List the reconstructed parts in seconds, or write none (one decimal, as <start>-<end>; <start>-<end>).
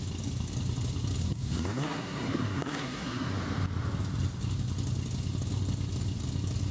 1.2-3.3